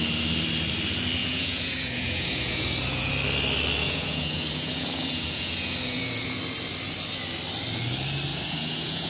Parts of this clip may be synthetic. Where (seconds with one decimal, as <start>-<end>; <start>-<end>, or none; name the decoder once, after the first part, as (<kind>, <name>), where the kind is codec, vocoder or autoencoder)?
1.2-3.1 (vocoder, Vocos); 3.8-6.4; 8.3-9.1